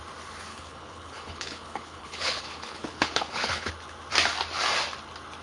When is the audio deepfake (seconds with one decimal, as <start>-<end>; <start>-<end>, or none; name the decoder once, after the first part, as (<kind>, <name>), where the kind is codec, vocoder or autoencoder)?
0.5-3.7 (codec, HILCodec)